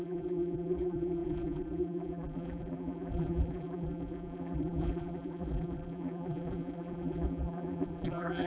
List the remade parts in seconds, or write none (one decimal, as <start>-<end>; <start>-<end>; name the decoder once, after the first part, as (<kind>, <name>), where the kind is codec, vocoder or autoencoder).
0.0-8.5 (vocoder, BigVGAN v2)